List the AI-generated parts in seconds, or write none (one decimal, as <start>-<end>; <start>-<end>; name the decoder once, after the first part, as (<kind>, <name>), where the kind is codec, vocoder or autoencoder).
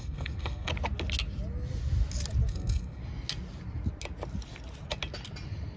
0.0-0.7 (codec, SNAC); 2.5-3.0